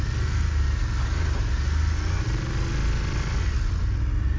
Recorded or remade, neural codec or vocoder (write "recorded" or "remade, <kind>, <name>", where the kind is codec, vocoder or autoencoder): recorded